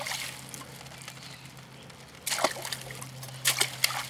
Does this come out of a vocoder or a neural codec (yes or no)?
no